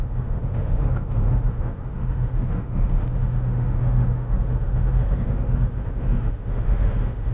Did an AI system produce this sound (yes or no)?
yes